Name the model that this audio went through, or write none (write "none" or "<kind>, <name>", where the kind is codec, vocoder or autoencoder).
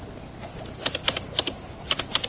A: none